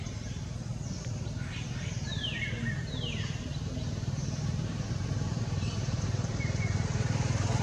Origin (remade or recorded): remade